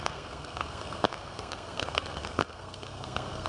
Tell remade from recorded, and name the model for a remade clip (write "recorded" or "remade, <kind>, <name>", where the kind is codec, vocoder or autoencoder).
remade, codec, SNAC